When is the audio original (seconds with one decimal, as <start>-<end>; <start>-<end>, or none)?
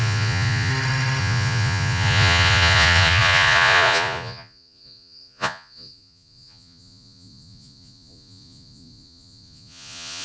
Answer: 0.7-1.2